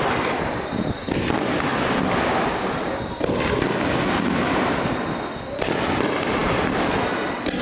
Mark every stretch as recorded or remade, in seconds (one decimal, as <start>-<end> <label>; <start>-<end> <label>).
0.0-7.6 recorded